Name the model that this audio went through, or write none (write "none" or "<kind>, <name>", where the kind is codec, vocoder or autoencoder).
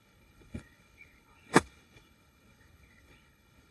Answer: codec, HILCodec